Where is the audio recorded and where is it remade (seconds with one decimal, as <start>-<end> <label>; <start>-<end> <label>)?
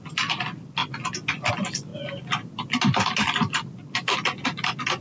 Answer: 0.0-0.8 remade; 0.8-1.5 recorded; 1.5-1.9 remade; 1.9-5.0 recorded